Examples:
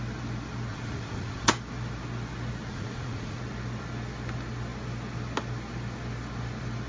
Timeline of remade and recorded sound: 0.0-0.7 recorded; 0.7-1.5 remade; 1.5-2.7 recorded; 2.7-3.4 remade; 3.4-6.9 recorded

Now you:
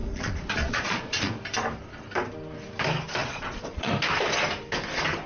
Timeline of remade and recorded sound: 0.0-1.3 remade; 1.3-3.2 recorded; 3.2-3.9 remade; 3.9-5.3 recorded

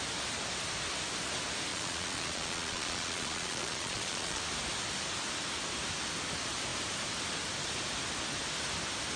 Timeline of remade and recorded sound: 0.0-1.7 recorded; 1.7-4.4 remade; 4.4-9.2 recorded